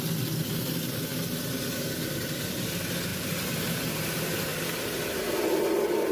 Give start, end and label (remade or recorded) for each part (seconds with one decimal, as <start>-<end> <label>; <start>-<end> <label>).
0.0-1.1 recorded; 1.1-2.3 remade; 2.3-3.1 recorded; 3.1-3.9 remade; 3.9-6.1 recorded